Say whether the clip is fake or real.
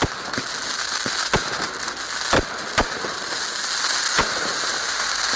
real